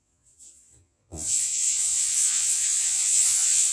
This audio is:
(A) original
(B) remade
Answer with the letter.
B